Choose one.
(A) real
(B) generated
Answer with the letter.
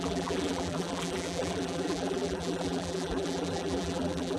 B